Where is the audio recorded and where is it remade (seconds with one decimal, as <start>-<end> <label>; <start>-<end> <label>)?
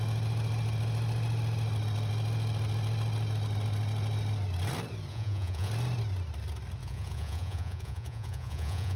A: 0.0-5.1 recorded; 5.1-5.7 remade; 5.7-6.8 recorded; 6.8-9.0 remade